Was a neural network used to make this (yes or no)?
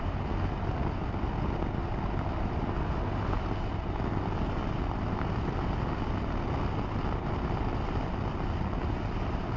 no